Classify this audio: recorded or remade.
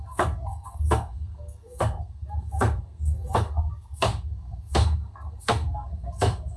remade